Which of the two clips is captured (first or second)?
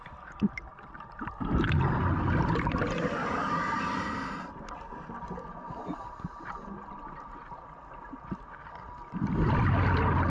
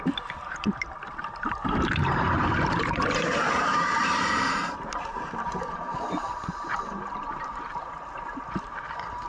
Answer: first